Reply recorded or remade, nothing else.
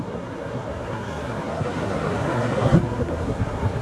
remade